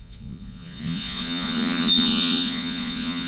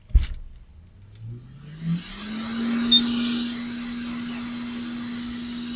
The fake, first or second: first